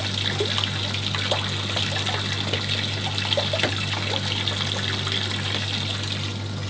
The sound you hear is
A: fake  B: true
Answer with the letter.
B